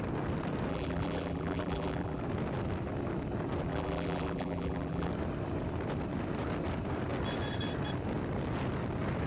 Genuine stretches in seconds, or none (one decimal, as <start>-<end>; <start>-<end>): 0.0-0.7; 2.2-3.7; 5.1-9.3